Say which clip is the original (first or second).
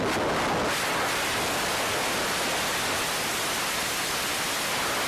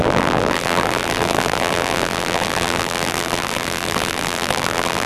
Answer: first